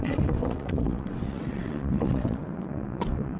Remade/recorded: remade